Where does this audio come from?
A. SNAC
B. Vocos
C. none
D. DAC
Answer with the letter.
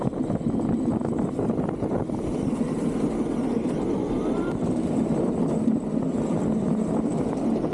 C